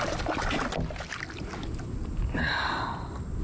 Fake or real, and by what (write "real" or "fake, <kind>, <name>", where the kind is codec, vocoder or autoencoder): real